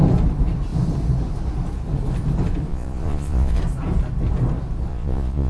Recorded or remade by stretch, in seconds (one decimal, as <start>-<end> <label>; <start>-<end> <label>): 0.0-2.7 recorded; 2.7-3.6 remade; 3.6-4.9 recorded; 4.9-5.5 remade

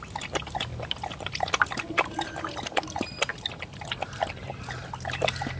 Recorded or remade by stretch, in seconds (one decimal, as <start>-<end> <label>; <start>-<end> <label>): 0.0-5.6 recorded

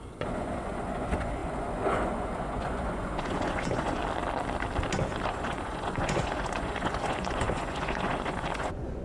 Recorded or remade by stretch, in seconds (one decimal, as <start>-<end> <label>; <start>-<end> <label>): 0.0-4.0 remade; 4.0-5.2 recorded; 5.2-9.0 remade